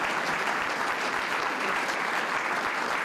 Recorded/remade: recorded